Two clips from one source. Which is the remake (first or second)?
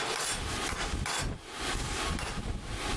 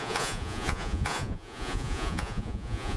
second